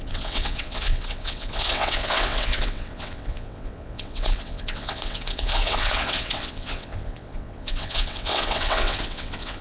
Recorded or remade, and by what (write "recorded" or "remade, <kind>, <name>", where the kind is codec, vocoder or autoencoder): remade, vocoder, WaveNeXt